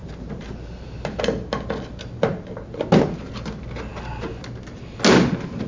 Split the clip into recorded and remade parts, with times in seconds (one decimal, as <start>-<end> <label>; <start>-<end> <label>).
0.0-5.7 recorded